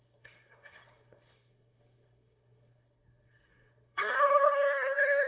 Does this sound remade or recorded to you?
remade